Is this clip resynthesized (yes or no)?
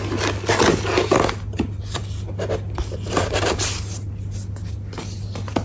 no